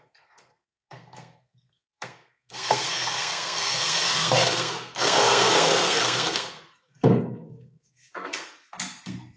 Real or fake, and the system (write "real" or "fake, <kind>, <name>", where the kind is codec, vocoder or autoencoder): fake, codec, SNAC